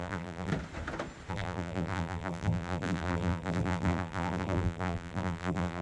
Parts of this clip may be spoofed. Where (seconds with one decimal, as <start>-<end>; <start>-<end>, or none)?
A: 0.0-0.5; 1.3-5.8